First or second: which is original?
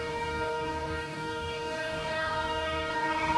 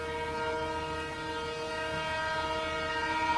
second